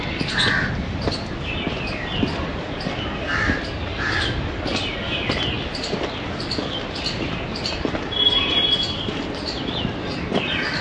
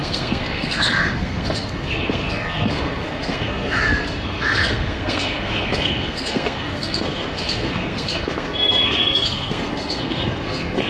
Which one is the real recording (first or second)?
first